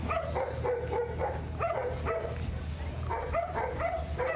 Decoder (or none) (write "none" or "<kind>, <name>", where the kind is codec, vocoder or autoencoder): none